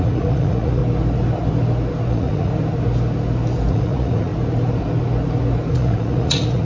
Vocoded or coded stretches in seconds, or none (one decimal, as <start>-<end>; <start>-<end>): 0.0-0.8; 2.1-2.5; 3.7-4.3; 5.7-6.6